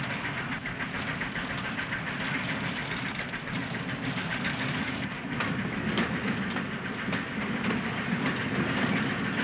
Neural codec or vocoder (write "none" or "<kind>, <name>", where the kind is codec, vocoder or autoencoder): none